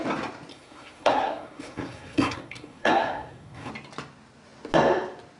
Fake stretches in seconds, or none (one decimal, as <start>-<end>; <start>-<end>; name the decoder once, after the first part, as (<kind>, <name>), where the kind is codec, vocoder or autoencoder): 0.5-3.7 (codec, SNAC)